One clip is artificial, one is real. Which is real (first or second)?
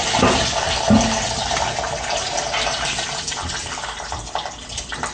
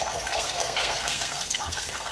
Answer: first